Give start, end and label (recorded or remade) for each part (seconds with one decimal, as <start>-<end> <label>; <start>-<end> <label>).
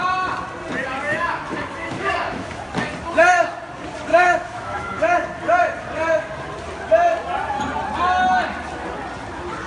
0.0-1.1 recorded; 1.1-2.7 remade; 2.7-4.1 recorded; 4.1-5.0 remade; 5.0-9.7 recorded